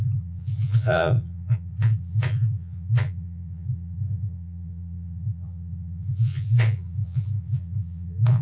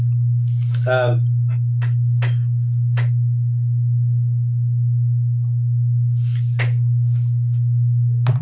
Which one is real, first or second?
second